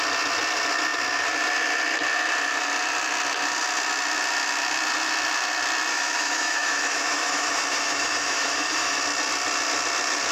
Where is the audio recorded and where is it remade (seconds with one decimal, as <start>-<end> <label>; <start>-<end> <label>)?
0.0-5.9 recorded; 5.9-9.0 remade; 9.0-10.3 recorded